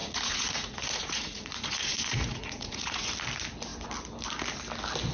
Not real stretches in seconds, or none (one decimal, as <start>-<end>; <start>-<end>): 0.0-3.1